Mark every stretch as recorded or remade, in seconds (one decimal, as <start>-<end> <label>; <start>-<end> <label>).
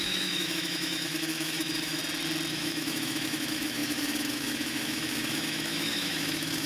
0.0-2.0 remade; 2.0-2.5 recorded; 2.5-6.7 remade